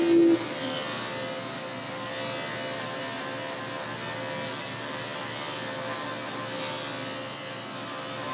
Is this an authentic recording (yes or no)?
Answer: yes